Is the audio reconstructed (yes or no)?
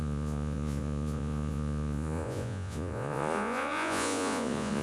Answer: yes